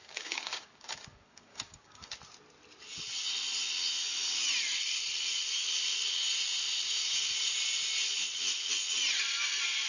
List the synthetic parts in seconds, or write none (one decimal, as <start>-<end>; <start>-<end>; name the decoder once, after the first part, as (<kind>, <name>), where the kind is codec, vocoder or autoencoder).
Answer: 0.0-2.1 (codec, DAC)

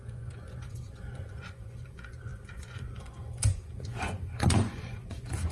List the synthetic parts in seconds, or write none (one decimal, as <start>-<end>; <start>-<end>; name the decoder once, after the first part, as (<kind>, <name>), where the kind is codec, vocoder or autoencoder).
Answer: 0.0-5.5 (vocoder, Vocos)

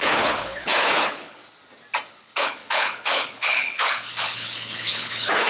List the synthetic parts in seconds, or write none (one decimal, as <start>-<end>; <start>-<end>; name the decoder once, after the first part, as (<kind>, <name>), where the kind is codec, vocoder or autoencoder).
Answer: 0.0-1.4 (codec, HILCodec); 2.1-5.5

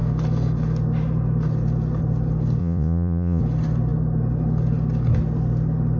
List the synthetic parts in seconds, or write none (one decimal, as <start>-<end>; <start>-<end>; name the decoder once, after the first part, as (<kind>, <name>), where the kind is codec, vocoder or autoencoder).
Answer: 2.6-3.4 (vocoder, Vocos)

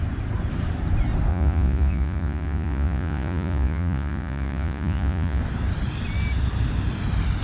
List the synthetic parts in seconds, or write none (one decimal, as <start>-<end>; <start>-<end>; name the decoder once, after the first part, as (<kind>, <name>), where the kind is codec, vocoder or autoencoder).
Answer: 1.3-5.4 (vocoder, Vocos)